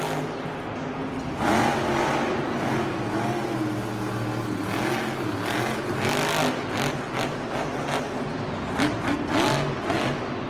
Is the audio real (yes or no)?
yes